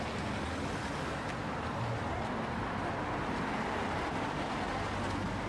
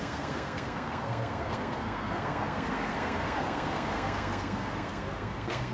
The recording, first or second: first